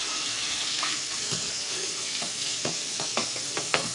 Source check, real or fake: fake